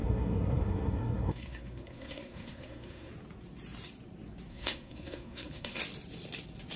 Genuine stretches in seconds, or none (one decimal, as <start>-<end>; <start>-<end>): 3.1-4.5; 5.8-6.8